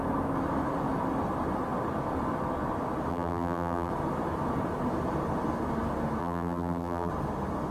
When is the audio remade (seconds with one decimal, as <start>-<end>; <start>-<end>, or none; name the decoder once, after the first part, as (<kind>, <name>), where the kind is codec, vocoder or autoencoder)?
3.1-3.9 (vocoder, BigVGAN v2); 6.2-7.1